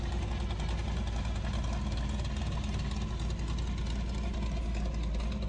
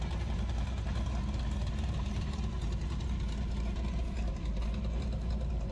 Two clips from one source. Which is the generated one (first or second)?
second